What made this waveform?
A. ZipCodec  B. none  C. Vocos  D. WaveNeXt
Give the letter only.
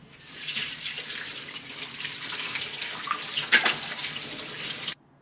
B